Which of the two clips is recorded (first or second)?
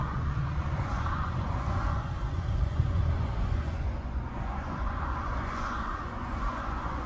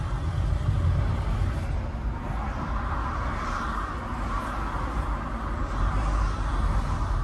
second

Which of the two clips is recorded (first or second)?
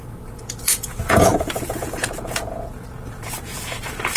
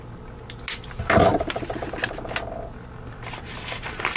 second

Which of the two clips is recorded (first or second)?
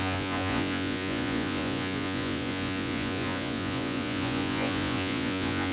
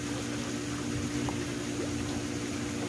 second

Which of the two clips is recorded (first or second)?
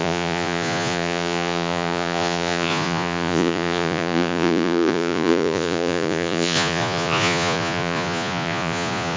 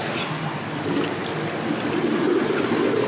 second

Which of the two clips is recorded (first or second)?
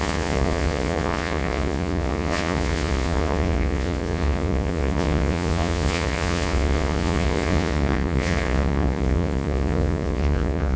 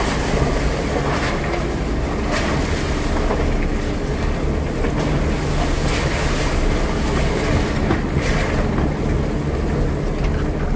second